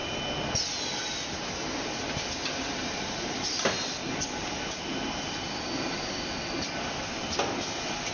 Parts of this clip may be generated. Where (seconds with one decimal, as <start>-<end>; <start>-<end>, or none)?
2.8-8.1